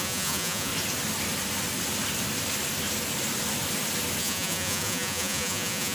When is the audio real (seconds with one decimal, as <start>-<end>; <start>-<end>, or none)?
0.7-4.2